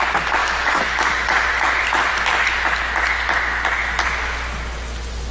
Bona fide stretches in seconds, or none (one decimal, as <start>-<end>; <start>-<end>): 0.0-0.4; 1.1-5.3